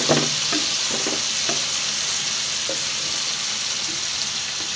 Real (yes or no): yes